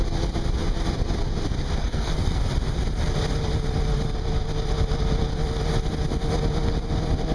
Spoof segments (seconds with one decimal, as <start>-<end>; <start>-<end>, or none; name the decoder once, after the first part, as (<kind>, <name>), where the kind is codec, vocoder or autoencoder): 1.8-2.4 (codec, SNAC)